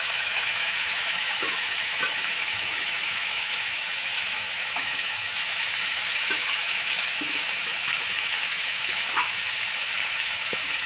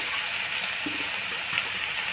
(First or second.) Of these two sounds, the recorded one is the second